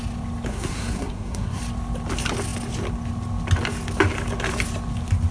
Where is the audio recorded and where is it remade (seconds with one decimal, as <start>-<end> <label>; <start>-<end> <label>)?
0.0-0.5 recorded; 0.5-1.6 remade; 1.6-5.3 recorded